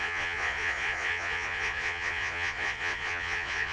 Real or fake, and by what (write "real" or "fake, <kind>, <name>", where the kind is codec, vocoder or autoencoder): fake, vocoder, Vocos